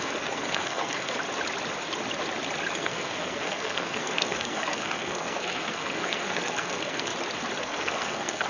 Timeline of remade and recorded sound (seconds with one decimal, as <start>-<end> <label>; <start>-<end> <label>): 0.0-1.2 remade; 1.2-2.7 recorded; 2.7-7.1 remade; 7.1-7.6 recorded; 7.6-8.5 remade